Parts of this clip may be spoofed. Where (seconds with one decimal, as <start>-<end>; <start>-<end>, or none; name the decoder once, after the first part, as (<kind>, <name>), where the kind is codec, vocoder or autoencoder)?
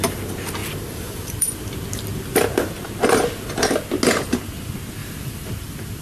0.6-1.6 (vocoder, BigVGAN v2); 5.0-5.5